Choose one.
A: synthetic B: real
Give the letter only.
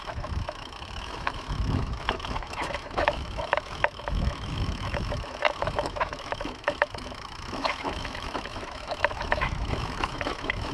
A